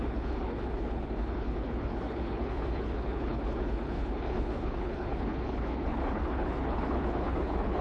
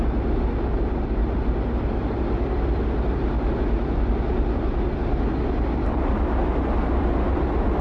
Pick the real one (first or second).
second